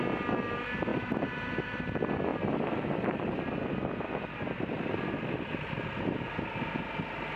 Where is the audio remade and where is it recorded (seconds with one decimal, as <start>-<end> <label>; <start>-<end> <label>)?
0.0-0.9 recorded; 0.9-1.8 remade; 1.8-7.4 recorded